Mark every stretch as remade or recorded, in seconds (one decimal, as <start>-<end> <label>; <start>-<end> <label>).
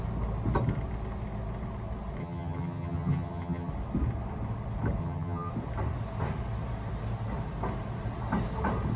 0.0-2.2 recorded; 2.2-3.7 remade; 3.7-5.0 recorded; 5.0-5.5 remade; 5.5-9.0 recorded